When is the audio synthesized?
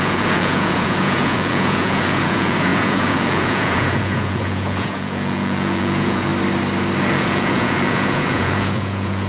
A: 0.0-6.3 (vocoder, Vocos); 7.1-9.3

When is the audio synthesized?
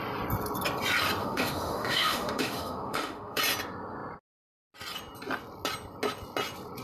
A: 1.2-3.4 (autoencoder, DAC-VAE)